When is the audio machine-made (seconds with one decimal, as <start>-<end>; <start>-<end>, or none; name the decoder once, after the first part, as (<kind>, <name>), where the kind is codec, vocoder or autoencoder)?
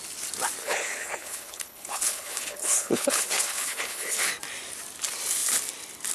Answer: 0.6-4.3 (codec, HILCodec)